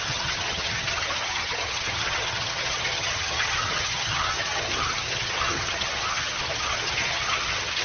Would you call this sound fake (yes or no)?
yes